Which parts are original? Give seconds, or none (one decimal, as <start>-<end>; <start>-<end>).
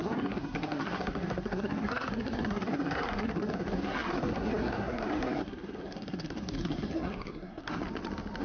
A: 7.8-8.4